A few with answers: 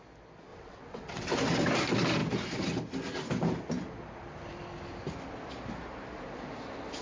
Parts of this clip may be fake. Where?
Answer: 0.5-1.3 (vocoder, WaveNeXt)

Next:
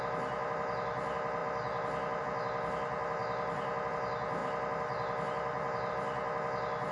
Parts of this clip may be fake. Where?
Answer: none

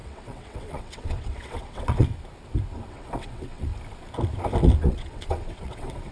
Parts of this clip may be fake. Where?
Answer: 0.0-2.1 (vocoder, WaveNeXt); 2.9-3.7; 4.8-6.1

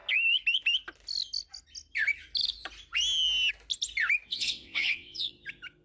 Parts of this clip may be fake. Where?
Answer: 4.3-5.3 (vocoder, WaveNeXt)

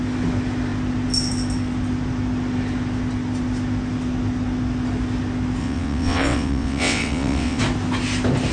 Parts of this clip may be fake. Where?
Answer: 5.6-7.6 (vocoder, WaveNeXt)

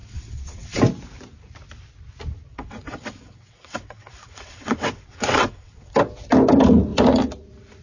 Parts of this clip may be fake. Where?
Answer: 0.0-0.8 (vocoder, WaveNeXt); 2.5-5.9